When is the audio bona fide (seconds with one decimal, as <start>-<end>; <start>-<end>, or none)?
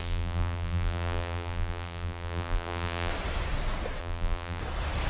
3.1-4.0; 4.6-5.1